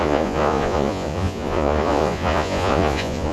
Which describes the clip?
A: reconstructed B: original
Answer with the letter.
A